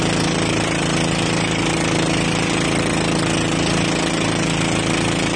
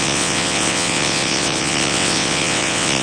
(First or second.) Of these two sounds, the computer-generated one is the second